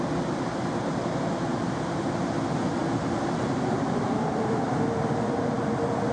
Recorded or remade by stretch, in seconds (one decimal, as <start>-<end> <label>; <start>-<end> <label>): 0.0-1.5 recorded; 1.5-2.0 remade; 2.0-2.8 recorded; 2.8-5.6 remade; 5.6-6.1 recorded

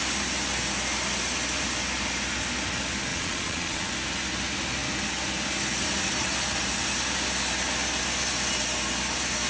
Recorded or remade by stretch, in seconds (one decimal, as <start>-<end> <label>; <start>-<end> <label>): 0.0-3.1 recorded; 3.1-3.9 remade; 3.9-9.5 recorded

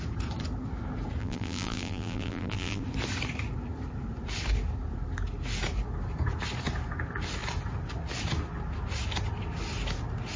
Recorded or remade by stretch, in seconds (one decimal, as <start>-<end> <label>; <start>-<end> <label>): 0.0-1.2 recorded; 1.2-2.8 remade; 2.8-10.4 recorded

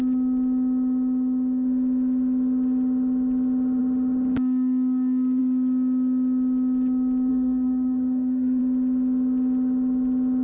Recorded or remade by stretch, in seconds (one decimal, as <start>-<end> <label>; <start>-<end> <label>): 0.0-7.3 recorded; 7.3-8.6 remade; 8.6-10.4 recorded